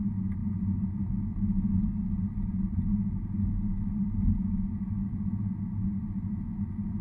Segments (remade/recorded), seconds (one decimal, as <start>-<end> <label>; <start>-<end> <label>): 0.0-0.4 recorded; 0.4-1.1 remade; 1.1-7.0 recorded